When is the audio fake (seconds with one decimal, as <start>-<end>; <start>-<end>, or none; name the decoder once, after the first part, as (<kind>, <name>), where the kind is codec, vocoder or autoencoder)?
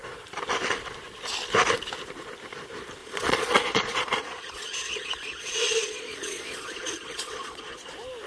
3.0-7.9 (vocoder, Vocos)